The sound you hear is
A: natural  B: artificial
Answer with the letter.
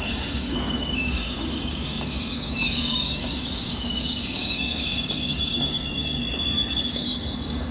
B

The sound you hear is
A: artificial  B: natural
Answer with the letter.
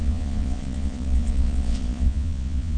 A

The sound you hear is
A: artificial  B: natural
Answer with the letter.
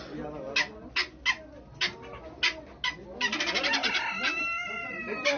B